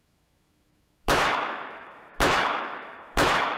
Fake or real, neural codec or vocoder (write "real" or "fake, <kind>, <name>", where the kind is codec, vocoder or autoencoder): fake, autoencoder, DAC-VAE